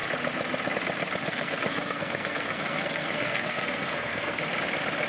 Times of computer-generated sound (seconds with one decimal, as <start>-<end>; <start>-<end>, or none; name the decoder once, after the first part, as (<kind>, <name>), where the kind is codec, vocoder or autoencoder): 1.3-4.4 (codec, SNAC)